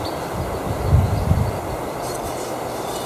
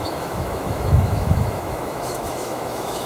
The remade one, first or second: second